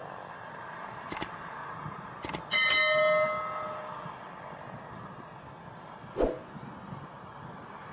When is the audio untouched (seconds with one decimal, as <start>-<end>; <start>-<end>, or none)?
0.0-1.6; 2.1-7.9